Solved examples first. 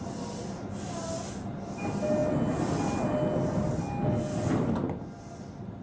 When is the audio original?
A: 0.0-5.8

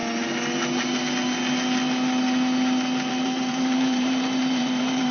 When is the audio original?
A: 0.0-3.1

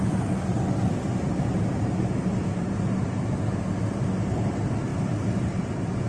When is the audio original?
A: 0.0-1.2; 3.2-4.9; 5.6-6.1

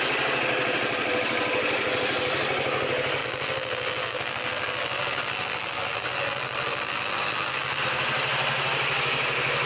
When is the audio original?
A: 0.0-3.2; 7.8-9.7

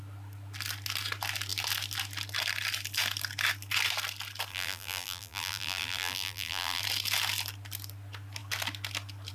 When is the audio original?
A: 0.0-4.5; 6.8-9.3

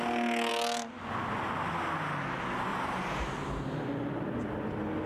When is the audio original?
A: 0.0-2.7; 3.8-5.1

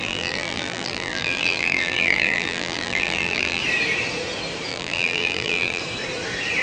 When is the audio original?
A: 3.6-4.7; 5.8-6.6